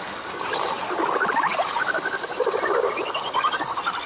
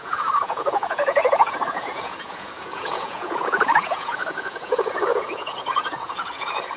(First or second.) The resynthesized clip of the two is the second